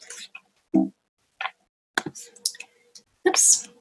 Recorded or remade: recorded